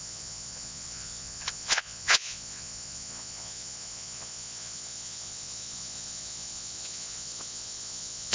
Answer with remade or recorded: remade